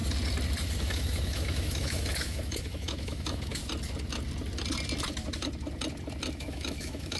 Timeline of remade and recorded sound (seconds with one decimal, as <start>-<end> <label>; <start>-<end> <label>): 0.0-0.8 recorded; 0.8-3.6 remade; 3.6-6.3 recorded; 6.3-7.2 remade